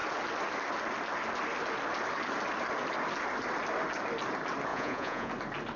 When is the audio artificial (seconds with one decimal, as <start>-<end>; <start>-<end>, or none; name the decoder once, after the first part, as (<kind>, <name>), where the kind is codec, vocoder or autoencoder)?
4.7-5.3 (vocoder, Vocos)